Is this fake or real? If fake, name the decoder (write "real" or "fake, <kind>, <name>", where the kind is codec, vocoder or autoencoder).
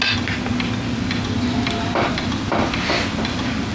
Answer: real